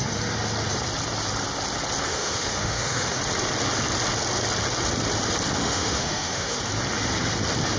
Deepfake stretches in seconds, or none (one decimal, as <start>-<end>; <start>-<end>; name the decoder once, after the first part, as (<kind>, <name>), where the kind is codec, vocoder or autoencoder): 2.1-3.2 (autoencoder, DAC-VAE); 5.6-6.6